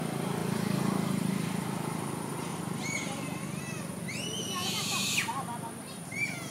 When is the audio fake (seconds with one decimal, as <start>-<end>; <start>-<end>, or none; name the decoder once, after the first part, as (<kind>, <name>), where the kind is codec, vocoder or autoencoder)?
2.5-3.6 (vocoder, BigVGAN v2); 4.6-5.1